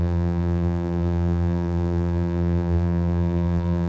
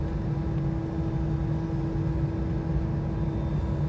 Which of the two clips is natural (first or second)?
second